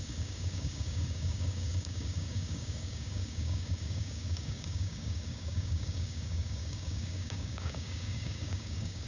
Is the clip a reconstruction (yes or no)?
yes